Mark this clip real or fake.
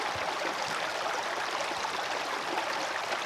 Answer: real